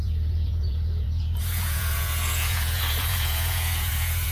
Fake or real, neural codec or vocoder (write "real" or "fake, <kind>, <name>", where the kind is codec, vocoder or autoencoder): fake, vocoder, Vocos